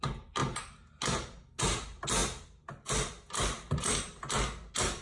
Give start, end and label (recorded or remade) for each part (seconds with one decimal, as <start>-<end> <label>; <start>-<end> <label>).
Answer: 0.0-5.0 recorded